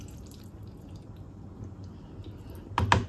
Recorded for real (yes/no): yes